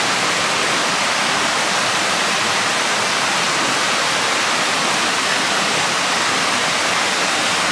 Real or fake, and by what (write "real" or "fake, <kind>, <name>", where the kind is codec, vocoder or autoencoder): fake, vocoder, BigVGAN v2